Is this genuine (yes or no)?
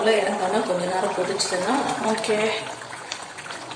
no